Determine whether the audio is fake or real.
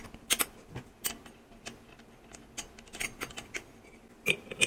real